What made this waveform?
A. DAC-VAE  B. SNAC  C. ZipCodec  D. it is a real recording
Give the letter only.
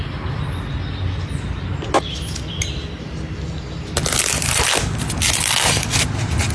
D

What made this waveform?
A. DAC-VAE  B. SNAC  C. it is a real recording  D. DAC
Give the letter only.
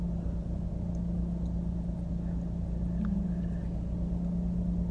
C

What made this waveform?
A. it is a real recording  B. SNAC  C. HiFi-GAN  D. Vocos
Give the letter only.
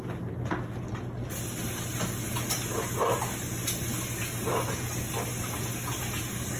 A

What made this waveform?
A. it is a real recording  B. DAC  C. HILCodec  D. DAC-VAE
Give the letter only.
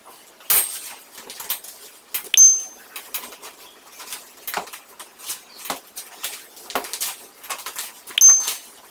A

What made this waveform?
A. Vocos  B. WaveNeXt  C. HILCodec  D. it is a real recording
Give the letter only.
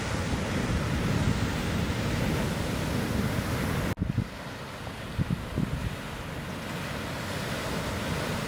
D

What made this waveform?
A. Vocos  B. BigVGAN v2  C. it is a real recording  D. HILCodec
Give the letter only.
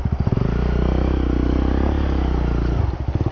C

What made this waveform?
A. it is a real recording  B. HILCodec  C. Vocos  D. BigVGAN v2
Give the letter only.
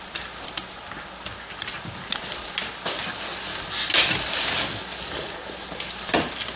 A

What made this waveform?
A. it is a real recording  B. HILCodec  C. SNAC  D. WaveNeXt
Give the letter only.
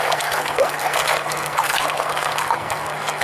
C